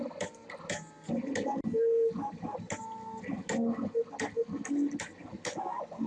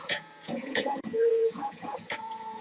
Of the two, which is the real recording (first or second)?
first